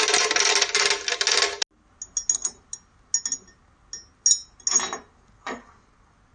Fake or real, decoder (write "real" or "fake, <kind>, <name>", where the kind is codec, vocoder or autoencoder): real